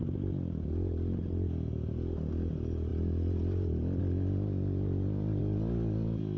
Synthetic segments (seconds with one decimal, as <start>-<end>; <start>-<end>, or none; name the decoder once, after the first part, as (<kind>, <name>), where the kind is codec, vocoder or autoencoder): none